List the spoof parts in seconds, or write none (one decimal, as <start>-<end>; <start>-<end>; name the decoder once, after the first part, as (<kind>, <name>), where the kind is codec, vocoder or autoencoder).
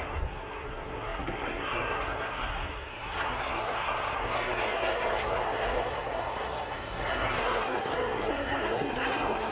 0.0-9.5 (codec, SNAC)